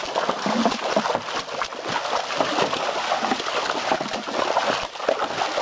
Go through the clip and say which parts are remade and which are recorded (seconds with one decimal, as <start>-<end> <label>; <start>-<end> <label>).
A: 0.0-5.6 recorded